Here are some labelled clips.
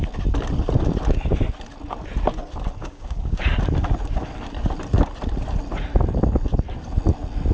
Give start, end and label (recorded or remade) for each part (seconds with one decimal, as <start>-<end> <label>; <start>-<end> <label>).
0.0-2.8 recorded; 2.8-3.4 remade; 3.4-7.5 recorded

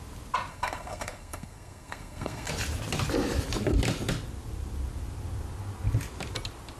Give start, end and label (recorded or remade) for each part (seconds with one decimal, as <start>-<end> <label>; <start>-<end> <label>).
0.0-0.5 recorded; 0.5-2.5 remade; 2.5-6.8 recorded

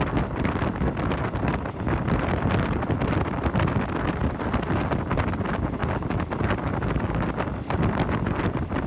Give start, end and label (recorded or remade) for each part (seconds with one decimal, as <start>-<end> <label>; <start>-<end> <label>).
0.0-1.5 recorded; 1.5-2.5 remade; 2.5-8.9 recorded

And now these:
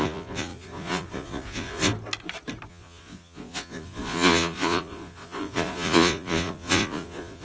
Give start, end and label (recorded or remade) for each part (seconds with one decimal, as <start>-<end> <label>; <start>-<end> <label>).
0.0-1.9 remade; 1.9-2.7 recorded; 2.7-7.4 remade